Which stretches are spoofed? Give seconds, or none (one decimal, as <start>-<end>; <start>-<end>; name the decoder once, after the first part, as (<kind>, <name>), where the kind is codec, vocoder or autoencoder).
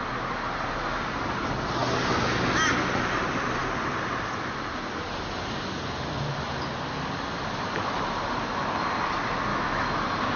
9.5-10.0 (autoencoder, DAC-VAE)